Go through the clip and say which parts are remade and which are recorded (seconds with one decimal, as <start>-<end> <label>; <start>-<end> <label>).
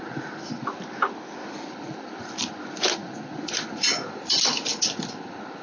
0.0-1.4 recorded; 1.4-4.4 remade; 4.4-5.6 recorded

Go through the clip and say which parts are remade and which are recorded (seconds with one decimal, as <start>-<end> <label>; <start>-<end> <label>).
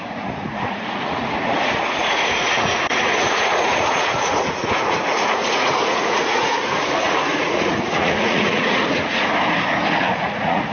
0.0-9.3 remade; 9.3-10.0 recorded; 10.0-10.7 remade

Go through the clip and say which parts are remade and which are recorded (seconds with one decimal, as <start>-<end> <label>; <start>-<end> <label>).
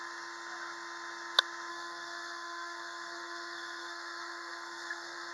0.0-1.7 recorded; 1.7-5.3 remade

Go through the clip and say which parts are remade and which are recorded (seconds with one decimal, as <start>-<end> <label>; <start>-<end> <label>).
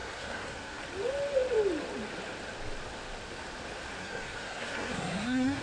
0.0-0.8 remade; 0.8-4.0 recorded; 4.0-5.6 remade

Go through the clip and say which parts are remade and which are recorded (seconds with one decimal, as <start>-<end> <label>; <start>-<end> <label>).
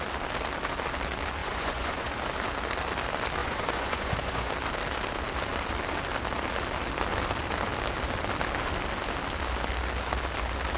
0.0-1.4 recorded; 1.4-2.1 remade; 2.1-3.4 recorded; 3.4-4.5 remade; 4.5-10.8 recorded